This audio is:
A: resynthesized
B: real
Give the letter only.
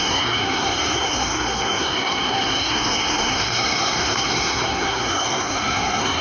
A